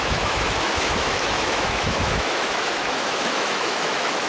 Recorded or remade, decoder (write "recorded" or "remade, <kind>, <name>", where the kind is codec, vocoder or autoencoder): remade, autoencoder, DAC-VAE